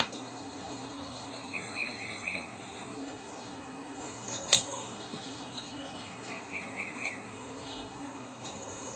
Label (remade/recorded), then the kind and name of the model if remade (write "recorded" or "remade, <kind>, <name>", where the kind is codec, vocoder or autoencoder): remade, codec, SNAC